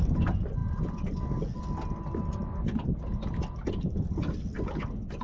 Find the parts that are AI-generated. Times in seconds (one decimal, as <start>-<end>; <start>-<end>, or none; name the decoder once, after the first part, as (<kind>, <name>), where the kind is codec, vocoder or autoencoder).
none